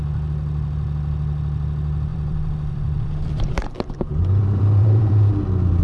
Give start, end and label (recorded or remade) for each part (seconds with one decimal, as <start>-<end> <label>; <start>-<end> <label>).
0.0-2.1 recorded; 2.1-5.3 remade; 5.3-5.8 recorded